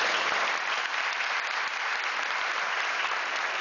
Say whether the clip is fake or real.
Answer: real